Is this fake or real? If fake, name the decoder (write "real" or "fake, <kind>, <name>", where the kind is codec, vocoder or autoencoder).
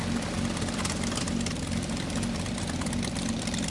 fake, vocoder, BigVGAN v2